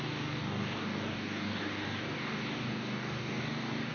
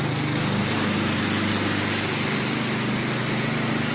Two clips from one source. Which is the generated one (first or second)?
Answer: first